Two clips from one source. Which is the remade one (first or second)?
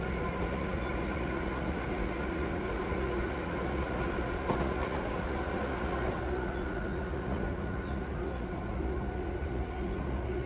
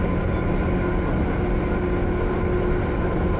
first